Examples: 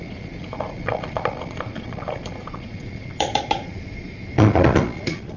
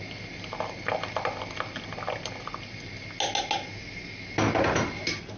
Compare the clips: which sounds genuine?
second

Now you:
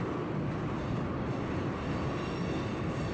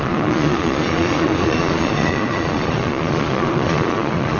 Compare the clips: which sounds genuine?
first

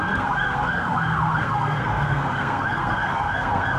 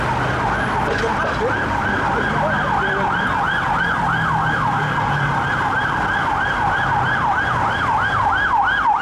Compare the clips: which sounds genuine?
second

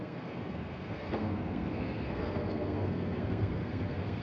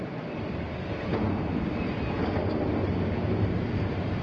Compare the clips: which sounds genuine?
second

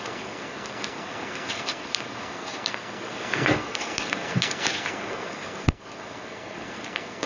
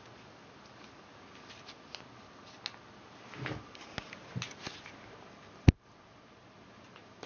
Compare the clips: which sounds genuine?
second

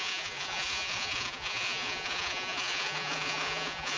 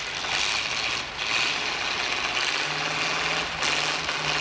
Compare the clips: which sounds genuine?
second